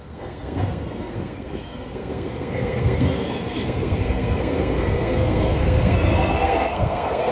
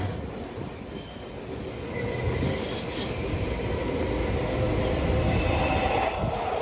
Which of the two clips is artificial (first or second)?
first